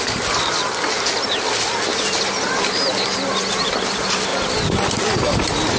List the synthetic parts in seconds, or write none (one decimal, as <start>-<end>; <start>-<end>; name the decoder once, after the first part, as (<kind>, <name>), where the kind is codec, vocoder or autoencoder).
1.9-2.6 (vocoder, BigVGAN v2)

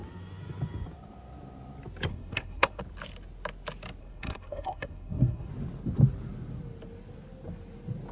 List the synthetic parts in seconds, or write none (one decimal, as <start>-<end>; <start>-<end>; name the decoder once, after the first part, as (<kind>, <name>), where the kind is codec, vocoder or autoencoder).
2.1-2.8 (codec, SNAC); 4.0-5.5

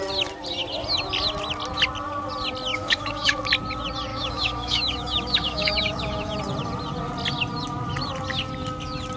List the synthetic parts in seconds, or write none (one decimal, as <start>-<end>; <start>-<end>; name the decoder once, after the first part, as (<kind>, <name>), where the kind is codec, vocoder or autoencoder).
2.7-3.4 (autoencoder, DAC-VAE); 4.1-6.4

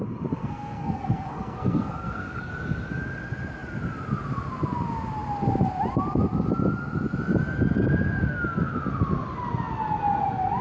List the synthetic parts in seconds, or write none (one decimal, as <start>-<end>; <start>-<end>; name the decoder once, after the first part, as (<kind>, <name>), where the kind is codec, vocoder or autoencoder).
0.4-2.5 (codec, SNAC)

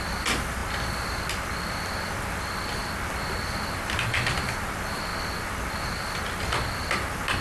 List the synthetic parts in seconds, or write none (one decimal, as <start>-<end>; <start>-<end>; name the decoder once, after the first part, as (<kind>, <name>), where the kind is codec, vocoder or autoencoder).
none

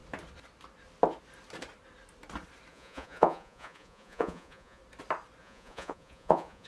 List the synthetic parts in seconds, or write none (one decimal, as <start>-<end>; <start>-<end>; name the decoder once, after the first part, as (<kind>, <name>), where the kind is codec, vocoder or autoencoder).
2.7-4.8 (vocoder, Vocos); 5.4-6.7

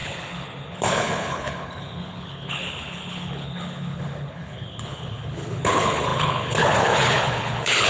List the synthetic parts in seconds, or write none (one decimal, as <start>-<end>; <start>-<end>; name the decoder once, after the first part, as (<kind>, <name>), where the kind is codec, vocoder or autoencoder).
0.0-7.9 (codec, HILCodec)

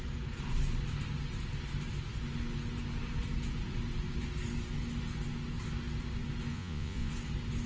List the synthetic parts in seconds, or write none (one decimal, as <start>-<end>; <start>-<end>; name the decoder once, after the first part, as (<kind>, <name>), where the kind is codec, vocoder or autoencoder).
6.5-7.1 (vocoder, Vocos)